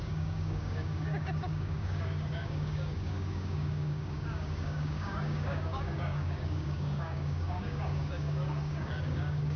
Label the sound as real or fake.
fake